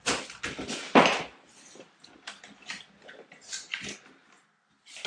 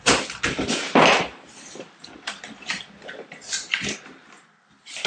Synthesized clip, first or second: second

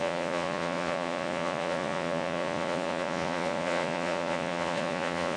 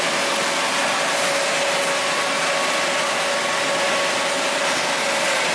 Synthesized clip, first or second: first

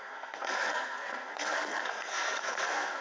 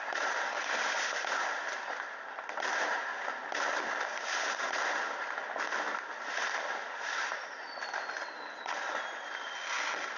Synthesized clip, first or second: first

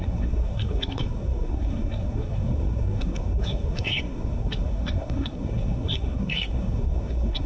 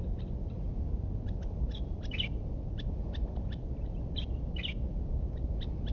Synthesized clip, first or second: first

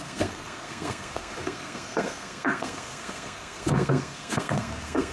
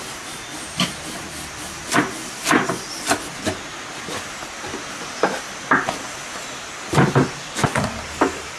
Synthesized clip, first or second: first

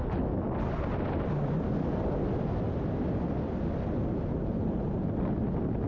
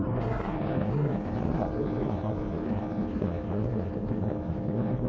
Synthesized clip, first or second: second